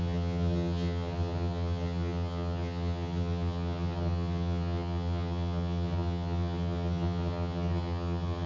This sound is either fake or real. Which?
fake